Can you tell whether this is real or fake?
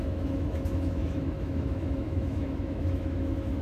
fake